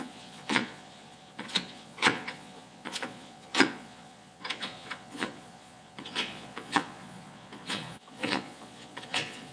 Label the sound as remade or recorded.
remade